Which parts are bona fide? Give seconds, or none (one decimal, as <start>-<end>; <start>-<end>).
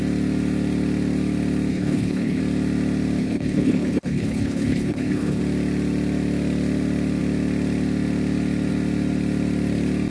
0.0-1.7; 2.4-3.2; 5.4-10.1